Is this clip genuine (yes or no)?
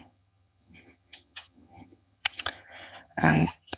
no